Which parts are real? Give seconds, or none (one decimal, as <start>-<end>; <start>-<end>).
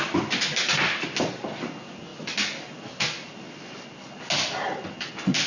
0.0-5.5